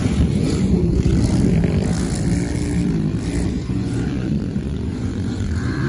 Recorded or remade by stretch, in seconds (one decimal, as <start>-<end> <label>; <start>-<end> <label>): 0.0-1.1 remade; 1.1-3.5 recorded; 3.5-5.9 remade